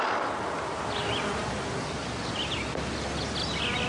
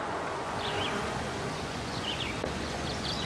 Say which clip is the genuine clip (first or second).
first